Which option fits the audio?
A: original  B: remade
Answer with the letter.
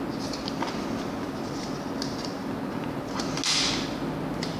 A